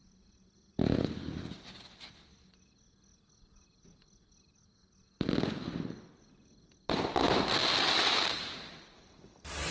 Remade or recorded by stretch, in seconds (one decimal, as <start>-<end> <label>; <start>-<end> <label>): 0.0-9.7 recorded